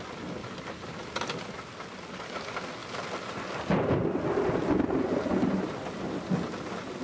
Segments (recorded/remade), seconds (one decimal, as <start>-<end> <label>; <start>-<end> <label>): 0.0-0.4 recorded; 0.4-1.2 remade; 1.2-7.0 recorded